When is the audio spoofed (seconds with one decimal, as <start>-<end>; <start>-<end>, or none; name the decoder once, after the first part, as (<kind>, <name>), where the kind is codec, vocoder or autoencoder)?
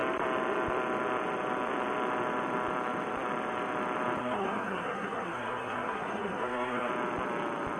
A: 4.2-6.9 (codec, SNAC)